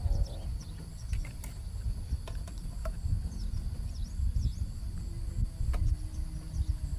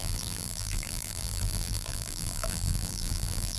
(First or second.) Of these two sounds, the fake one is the second